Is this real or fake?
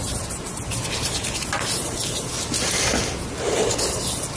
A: real